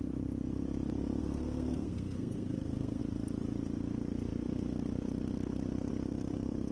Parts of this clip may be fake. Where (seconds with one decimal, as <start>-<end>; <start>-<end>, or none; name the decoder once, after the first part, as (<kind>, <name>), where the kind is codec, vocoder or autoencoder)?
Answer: 1.2-3.0 (codec, SNAC)

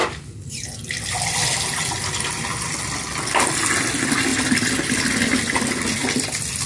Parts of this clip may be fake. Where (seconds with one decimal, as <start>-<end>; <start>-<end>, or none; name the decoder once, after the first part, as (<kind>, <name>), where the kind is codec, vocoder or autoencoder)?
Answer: none

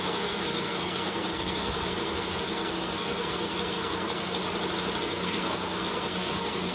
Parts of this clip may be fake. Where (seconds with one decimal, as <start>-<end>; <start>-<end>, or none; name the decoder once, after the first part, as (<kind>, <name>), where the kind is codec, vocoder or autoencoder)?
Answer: 0.0-4.4 (codec, SNAC); 5.0-6.7

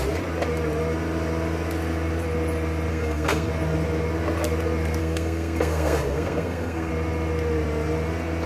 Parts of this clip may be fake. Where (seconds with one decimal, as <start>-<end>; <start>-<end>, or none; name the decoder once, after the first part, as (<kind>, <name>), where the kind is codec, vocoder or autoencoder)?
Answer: 2.9-3.5 (codec, SNAC); 5.0-6.9

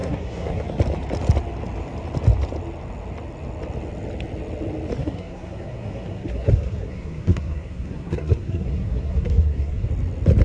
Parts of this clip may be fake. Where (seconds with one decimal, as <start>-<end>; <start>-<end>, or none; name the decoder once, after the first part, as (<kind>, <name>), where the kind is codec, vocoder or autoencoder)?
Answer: 0.0-0.6 (codec, SNAC); 5.0-9.9